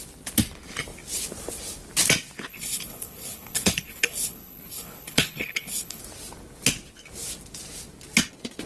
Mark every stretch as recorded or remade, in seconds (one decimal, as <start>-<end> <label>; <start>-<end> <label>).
0.0-2.5 recorded; 2.5-6.0 remade; 6.0-8.7 recorded